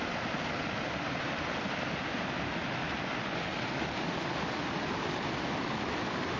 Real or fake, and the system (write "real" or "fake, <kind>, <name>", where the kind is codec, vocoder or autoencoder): real